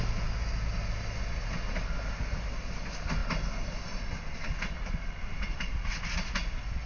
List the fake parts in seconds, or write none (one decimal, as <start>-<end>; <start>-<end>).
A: none